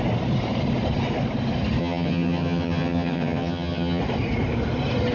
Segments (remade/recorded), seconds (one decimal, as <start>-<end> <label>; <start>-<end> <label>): 0.0-1.8 recorded; 1.8-4.0 remade; 4.0-5.1 recorded